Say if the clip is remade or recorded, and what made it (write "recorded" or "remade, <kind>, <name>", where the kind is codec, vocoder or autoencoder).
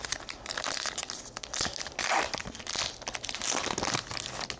recorded